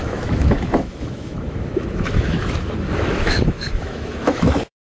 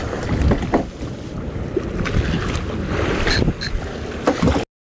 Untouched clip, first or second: second